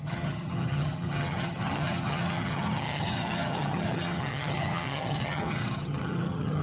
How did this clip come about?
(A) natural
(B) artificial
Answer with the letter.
B